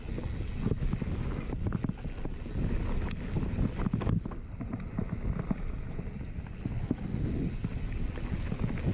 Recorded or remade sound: recorded